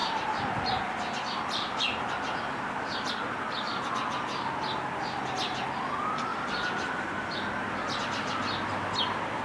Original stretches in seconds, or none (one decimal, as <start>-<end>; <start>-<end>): 3.1-6.3; 7.0-9.4